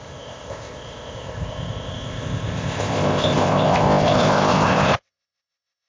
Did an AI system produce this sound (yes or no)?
yes